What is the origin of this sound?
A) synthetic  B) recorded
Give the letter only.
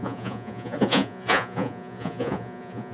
A